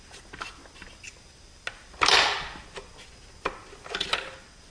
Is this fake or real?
real